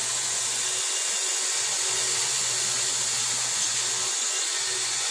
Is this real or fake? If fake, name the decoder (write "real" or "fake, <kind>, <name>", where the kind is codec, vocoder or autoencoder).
fake, vocoder, Vocos